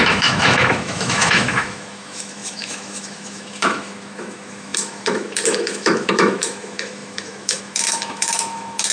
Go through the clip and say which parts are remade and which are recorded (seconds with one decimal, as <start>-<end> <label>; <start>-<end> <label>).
0.0-8.9 remade